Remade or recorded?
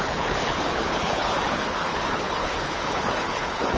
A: remade